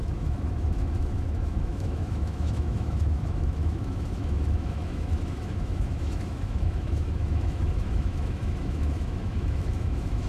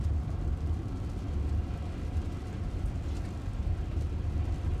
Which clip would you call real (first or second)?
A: second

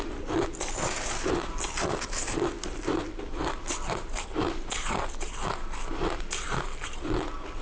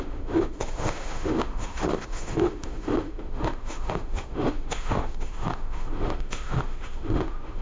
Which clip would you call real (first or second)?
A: first